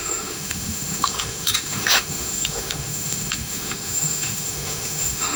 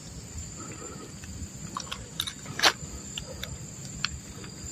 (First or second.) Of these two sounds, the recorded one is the second